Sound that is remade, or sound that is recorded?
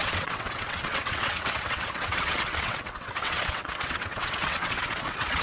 remade